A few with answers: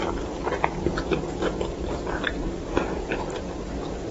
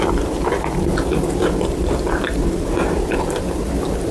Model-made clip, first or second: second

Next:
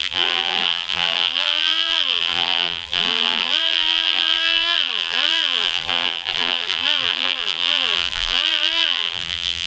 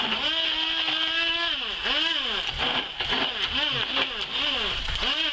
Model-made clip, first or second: first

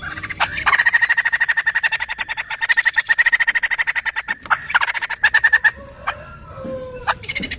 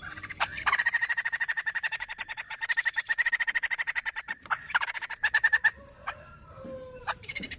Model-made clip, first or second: second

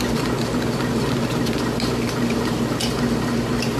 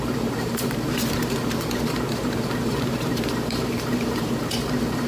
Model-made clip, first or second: second